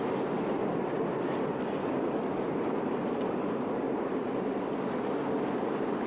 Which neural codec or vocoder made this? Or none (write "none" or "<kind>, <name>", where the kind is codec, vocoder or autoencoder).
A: none